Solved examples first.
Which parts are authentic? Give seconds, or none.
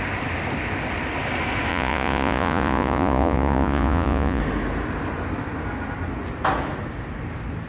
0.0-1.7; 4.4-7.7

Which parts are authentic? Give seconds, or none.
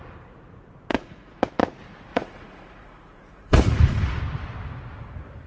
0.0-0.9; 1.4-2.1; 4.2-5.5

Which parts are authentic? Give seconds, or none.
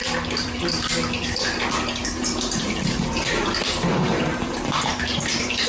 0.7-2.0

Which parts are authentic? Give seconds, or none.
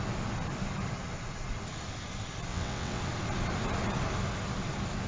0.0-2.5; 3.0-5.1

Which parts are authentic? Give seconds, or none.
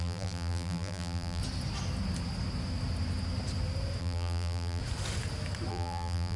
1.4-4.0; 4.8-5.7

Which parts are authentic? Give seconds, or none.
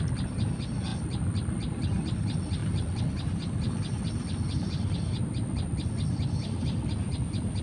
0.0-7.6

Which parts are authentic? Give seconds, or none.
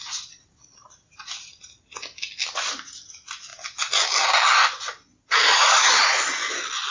0.0-6.9